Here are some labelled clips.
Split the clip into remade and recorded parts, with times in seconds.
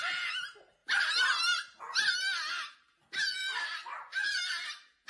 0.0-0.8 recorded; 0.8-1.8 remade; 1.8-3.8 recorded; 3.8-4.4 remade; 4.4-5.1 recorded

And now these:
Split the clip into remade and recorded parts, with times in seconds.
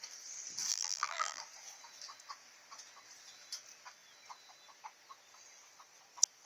0.0-0.7 recorded; 0.7-1.4 remade; 1.4-6.5 recorded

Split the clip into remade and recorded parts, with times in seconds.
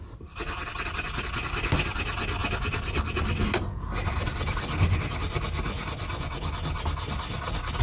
0.0-7.8 recorded